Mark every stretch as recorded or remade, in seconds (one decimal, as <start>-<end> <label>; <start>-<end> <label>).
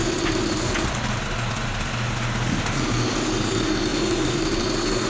0.0-5.1 recorded